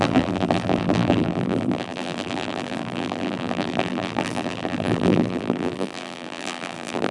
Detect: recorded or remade remade